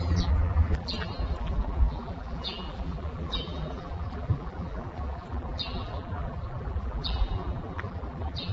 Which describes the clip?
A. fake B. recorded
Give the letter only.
A